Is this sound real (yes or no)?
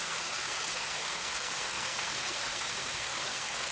no